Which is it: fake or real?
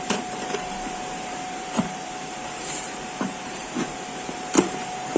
fake